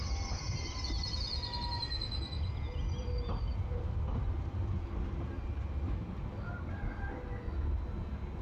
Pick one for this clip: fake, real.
real